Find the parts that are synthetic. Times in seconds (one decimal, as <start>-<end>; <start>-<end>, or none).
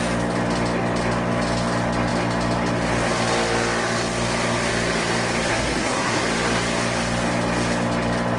5.5-6.2